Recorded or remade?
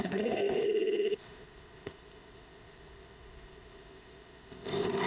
remade